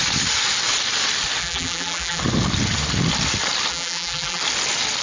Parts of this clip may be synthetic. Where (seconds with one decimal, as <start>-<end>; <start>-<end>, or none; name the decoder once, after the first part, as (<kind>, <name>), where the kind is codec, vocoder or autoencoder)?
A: 1.4-2.2 (vocoder, BigVGAN v2); 3.7-4.4